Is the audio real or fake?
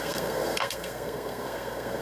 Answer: fake